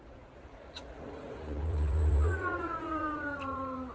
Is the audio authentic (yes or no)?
no